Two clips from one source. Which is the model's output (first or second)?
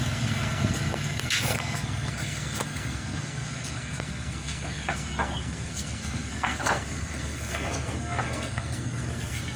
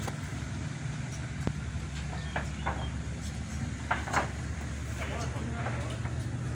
first